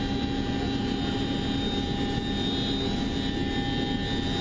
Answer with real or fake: real